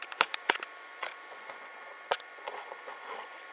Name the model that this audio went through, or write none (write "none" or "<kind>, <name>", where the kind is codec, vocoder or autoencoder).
vocoder, Vocos